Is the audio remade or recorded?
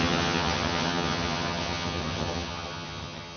remade